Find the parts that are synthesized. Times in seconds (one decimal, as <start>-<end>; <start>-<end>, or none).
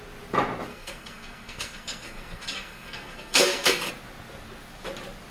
0.7-3.9